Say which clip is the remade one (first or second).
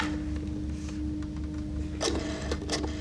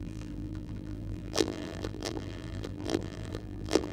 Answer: second